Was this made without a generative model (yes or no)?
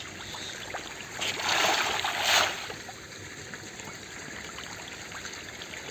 yes